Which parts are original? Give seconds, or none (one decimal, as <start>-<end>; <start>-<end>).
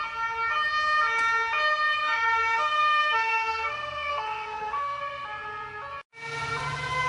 0.0-2.0; 5.0-7.1